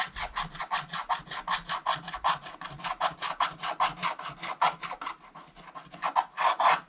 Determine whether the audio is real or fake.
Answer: real